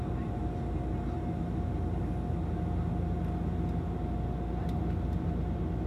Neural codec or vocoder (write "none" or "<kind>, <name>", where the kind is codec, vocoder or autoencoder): none